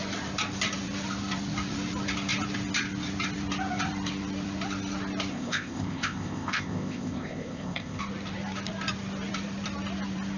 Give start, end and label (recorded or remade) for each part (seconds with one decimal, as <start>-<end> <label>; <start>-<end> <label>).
0.0-5.3 recorded; 5.3-8.0 remade; 8.0-10.4 recorded

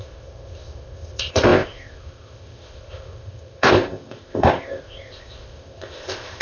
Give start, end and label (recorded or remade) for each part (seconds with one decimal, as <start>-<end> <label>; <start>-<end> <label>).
0.0-6.4 remade

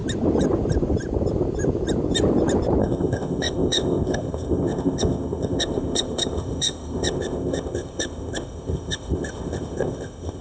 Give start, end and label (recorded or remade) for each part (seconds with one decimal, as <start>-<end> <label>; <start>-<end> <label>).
0.0-2.8 recorded; 2.8-10.4 remade

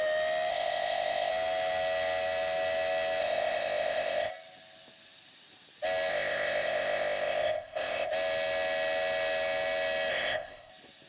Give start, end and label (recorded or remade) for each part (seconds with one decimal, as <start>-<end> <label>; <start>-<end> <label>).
0.0-0.5 recorded; 0.5-1.3 remade; 1.3-3.2 recorded; 3.2-4.3 remade; 4.3-6.1 recorded; 6.1-8.1 remade; 8.1-10.1 recorded; 10.1-10.7 remade; 10.7-11.1 recorded

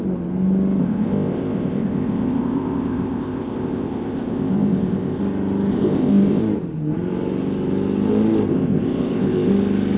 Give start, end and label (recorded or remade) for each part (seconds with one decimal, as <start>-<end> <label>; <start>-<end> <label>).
0.0-0.8 recorded; 0.8-5.2 remade; 5.2-5.7 recorded; 5.7-6.4 remade; 6.4-8.5 recorded; 8.5-9.5 remade; 9.5-10.0 recorded